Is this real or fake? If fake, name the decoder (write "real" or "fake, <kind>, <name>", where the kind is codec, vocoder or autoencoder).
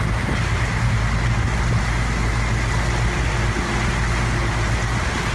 real